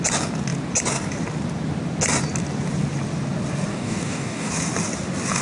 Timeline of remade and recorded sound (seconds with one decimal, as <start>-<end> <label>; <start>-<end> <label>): 0.0-3.7 recorded; 3.7-4.5 remade; 4.5-5.4 recorded